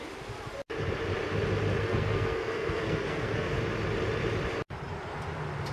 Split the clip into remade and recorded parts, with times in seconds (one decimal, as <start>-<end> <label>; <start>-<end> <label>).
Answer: 0.0-1.8 recorded; 1.8-3.6 remade; 3.6-5.7 recorded